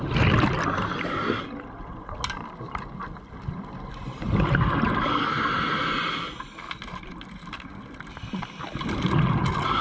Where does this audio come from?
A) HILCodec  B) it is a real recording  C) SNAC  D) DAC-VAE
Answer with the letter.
B